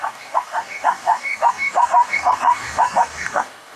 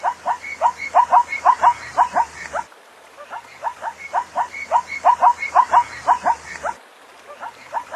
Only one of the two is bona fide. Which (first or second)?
second